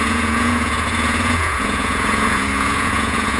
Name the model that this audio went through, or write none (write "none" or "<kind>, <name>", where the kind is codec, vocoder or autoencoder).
vocoder, Vocos